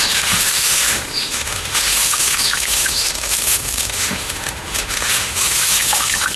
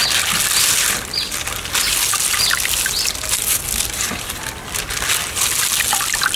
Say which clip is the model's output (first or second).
first